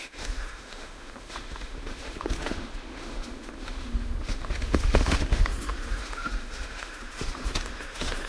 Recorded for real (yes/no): no